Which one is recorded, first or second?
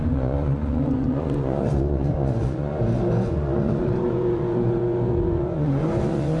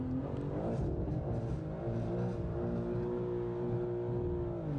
second